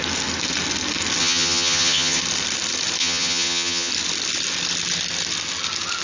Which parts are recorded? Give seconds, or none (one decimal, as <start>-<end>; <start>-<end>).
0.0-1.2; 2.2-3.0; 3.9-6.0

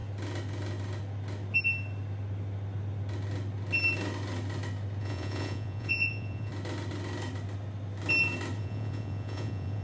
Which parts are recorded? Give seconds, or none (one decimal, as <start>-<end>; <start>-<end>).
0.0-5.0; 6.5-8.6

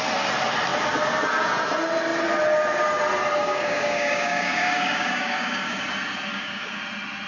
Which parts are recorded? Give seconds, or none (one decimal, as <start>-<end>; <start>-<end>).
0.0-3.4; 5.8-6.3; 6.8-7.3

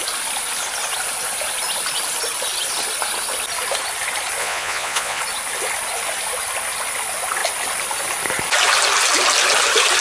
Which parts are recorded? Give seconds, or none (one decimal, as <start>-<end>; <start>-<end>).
0.0-4.4; 5.2-10.0